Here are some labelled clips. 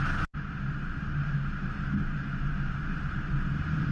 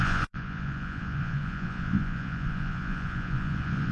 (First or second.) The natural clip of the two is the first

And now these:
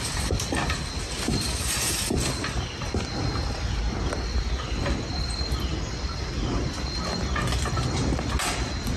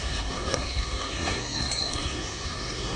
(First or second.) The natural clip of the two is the first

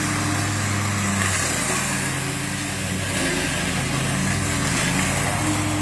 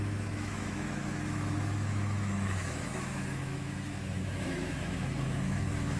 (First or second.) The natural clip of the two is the first